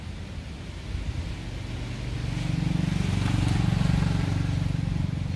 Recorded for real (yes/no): yes